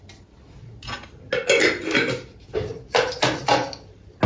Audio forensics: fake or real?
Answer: real